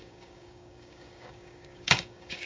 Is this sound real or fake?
fake